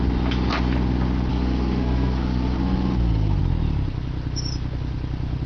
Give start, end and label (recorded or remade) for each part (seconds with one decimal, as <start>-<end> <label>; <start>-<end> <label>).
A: 0.0-1.3 recorded; 1.3-3.4 remade; 3.4-5.5 recorded